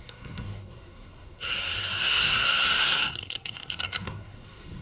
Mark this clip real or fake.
fake